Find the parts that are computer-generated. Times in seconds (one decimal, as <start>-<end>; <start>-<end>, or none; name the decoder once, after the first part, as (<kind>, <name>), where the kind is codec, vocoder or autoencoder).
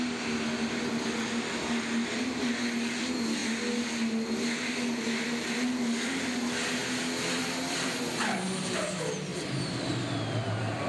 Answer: 6.8-8.2 (vocoder, BigVGAN v2); 9.3-10.0